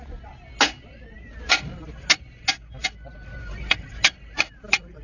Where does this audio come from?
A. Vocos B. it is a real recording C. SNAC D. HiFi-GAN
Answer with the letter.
B